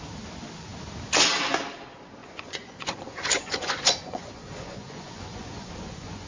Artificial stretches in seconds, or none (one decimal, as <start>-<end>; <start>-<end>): 2.2-6.3